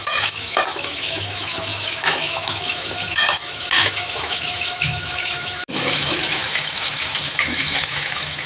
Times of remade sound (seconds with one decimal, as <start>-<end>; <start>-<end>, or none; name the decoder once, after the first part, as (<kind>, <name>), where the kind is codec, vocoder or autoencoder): 0.0-8.5 (autoencoder, DAC-VAE)